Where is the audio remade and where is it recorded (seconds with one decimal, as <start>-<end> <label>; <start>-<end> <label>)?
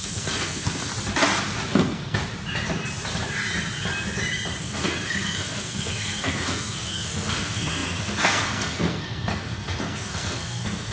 0.0-0.9 remade; 0.9-1.7 recorded; 1.7-2.2 remade; 2.2-4.6 recorded; 4.6-10.9 remade